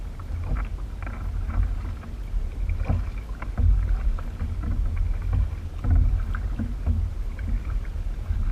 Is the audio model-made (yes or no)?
no